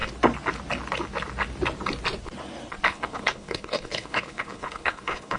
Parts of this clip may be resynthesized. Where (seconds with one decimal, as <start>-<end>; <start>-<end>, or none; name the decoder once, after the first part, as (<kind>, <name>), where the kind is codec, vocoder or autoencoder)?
2.9-5.4 (codec, HILCodec)